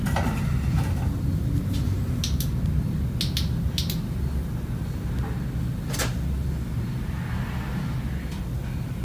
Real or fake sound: real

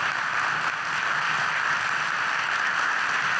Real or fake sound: real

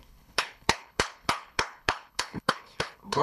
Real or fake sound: fake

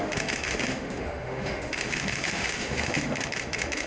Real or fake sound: fake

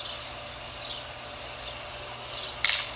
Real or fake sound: real